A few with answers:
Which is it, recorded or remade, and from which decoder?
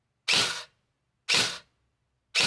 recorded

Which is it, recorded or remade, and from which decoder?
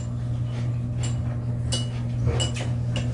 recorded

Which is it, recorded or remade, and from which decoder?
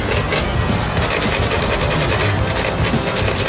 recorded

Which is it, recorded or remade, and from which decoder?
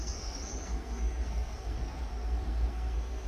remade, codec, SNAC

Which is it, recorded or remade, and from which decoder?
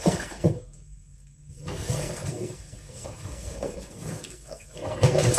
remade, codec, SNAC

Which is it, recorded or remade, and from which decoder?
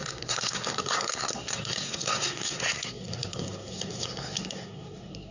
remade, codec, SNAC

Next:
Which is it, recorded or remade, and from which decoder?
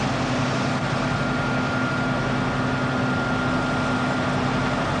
recorded